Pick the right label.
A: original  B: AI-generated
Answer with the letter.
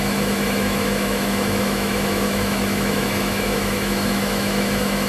B